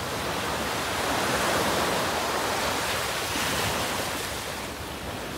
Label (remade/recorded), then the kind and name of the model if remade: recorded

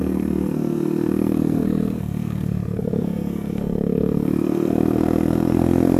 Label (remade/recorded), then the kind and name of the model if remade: remade, codec, SNAC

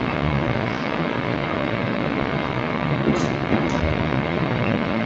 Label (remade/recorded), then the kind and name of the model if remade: remade, vocoder, Vocos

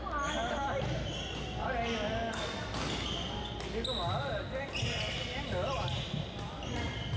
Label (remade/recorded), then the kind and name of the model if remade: recorded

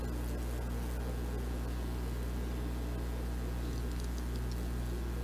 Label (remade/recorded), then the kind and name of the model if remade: recorded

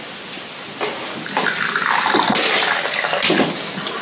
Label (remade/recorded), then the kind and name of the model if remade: recorded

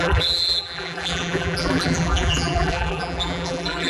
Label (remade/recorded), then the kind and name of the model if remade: remade, vocoder, BigVGAN v2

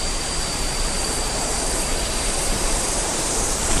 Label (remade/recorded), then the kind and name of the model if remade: remade, vocoder, BigVGAN v2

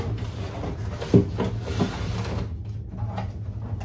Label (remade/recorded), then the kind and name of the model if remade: recorded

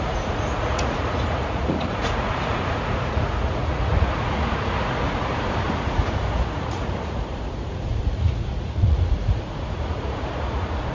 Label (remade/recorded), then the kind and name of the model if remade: remade, vocoder, Vocos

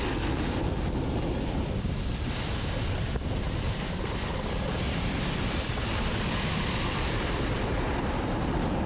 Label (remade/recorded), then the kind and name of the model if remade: recorded